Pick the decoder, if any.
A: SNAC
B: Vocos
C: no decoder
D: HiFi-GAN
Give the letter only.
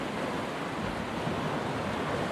C